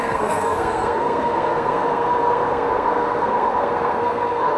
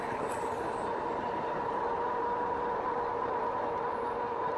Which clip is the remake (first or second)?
first